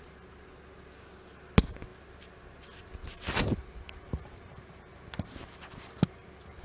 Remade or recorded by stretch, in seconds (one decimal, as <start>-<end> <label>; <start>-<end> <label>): 0.0-6.6 recorded